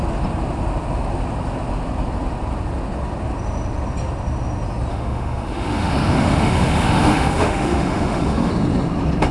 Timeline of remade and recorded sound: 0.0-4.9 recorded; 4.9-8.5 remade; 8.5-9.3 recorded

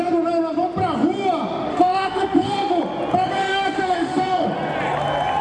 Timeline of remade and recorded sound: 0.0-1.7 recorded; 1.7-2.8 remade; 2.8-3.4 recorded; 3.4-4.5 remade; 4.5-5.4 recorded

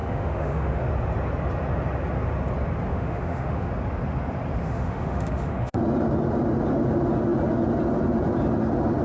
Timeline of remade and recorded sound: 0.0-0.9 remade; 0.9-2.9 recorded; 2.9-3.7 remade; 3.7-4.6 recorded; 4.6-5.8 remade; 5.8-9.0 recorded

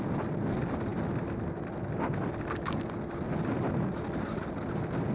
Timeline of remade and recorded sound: 0.0-5.1 recorded

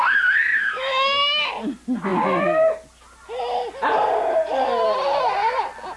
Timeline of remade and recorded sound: 0.0-0.5 recorded; 0.5-1.5 remade; 1.5-6.0 recorded